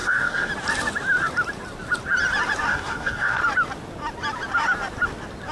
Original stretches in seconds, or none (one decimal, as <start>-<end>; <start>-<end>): 0.5-2.7; 3.4-5.5